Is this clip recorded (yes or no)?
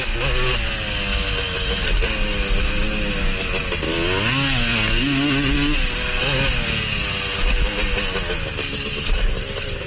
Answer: yes